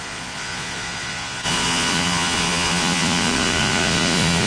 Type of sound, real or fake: fake